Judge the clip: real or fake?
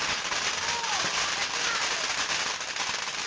real